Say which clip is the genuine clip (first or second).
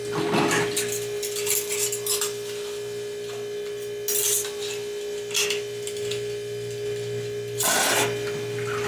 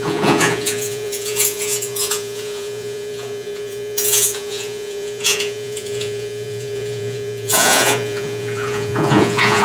first